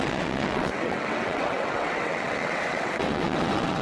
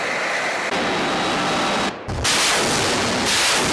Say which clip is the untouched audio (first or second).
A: second